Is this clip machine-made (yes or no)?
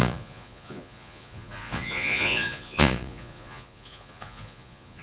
yes